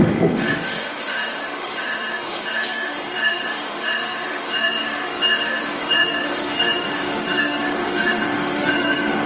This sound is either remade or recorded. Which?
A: remade